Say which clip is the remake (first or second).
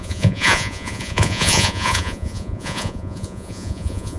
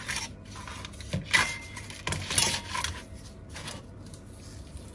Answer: first